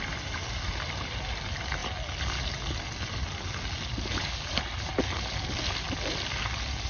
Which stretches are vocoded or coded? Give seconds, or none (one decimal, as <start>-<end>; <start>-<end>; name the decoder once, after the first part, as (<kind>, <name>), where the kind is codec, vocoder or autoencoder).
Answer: none